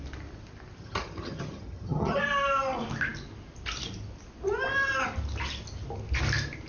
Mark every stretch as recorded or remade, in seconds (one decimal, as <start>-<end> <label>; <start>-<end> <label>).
0.0-0.8 recorded; 0.8-2.2 remade; 2.2-6.7 recorded